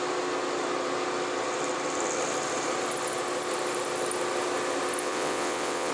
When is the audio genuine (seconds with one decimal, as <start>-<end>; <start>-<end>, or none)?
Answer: 0.0-5.0